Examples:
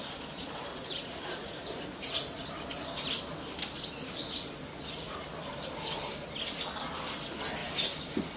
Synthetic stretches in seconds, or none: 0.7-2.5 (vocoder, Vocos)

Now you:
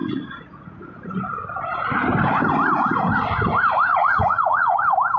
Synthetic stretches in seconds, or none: 0.0-1.1 (vocoder, Vocos); 3.9-4.8

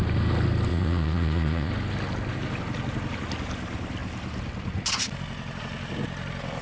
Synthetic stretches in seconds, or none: 0.7-1.7 (vocoder, Vocos)

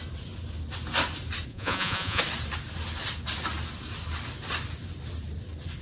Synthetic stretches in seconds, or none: 1.5-2.2 (vocoder, Vocos)

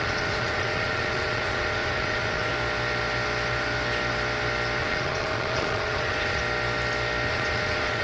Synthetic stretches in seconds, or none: 0.0-2.5 (vocoder, Vocos); 4.8-6.4; 7.3-8.0

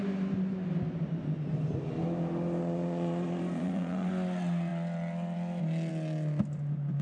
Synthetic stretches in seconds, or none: 2.6-4.1 (vocoder, Vocos)

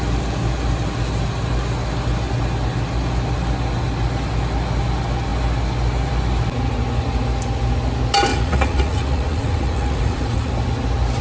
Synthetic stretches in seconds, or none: 8.3-10.5 (vocoder, Vocos)